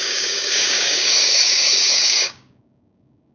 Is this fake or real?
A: fake